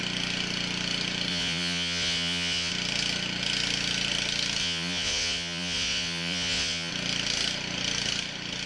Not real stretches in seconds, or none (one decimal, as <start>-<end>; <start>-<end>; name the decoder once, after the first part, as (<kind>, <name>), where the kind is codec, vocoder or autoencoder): 1.3-2.7 (vocoder, Vocos); 4.6-6.9